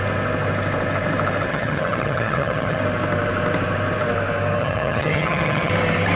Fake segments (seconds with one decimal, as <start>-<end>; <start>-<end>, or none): 1.5-2.8; 4.6-5.7